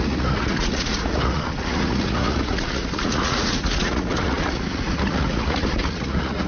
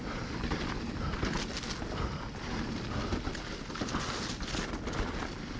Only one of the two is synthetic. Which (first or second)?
first